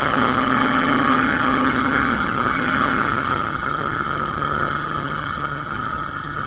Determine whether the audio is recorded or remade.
remade